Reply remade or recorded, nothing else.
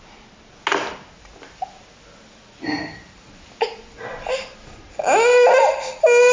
recorded